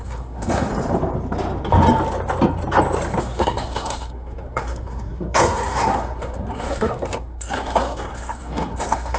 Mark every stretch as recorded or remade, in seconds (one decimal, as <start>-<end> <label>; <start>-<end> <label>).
0.0-0.7 remade; 0.7-3.2 recorded; 3.2-9.2 remade